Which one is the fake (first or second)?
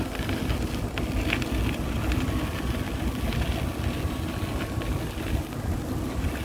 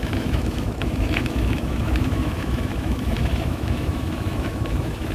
second